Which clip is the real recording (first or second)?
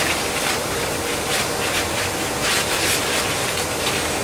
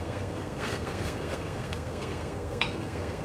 first